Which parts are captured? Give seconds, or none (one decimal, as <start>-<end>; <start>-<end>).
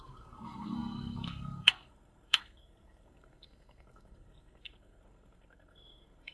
none